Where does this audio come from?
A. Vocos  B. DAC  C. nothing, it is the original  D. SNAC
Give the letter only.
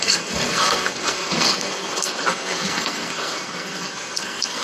D